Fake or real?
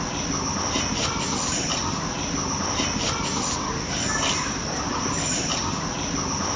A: real